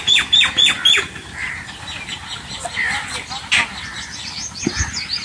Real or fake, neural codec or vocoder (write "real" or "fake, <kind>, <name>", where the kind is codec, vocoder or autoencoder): real